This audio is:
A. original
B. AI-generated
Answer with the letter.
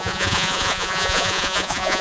B